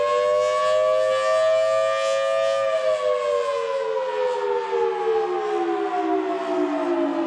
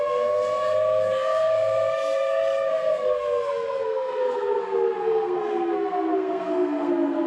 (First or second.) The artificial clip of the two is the second